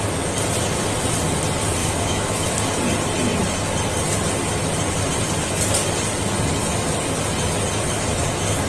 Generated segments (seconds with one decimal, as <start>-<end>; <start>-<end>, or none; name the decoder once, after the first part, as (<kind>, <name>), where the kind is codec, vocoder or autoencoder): 1.8-2.5 (autoencoder, DAC-VAE)